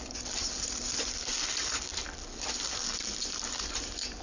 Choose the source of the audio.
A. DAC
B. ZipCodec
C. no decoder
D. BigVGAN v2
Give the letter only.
D